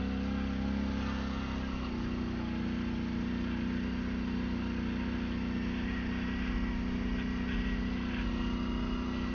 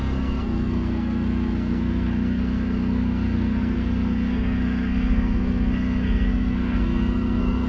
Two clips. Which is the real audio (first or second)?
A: first